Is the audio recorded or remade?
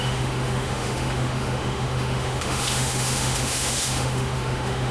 remade